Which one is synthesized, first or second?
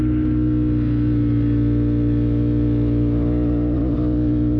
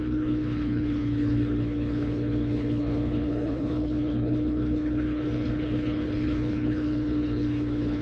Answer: second